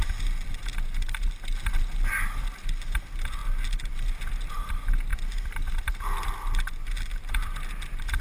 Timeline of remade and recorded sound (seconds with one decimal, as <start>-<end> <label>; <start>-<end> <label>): 0.0-8.2 recorded